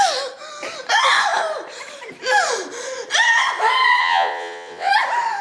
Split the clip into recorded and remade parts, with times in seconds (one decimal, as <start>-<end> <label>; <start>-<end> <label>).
0.0-4.0 recorded; 4.0-4.9 remade; 4.9-5.4 recorded